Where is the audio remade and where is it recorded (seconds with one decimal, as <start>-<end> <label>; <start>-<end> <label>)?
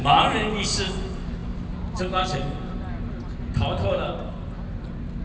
0.0-5.2 recorded